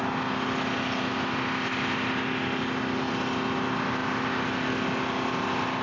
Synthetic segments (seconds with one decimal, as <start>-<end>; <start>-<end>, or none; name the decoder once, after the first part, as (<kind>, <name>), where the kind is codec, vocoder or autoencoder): none